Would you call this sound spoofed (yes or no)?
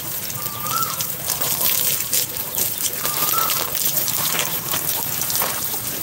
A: yes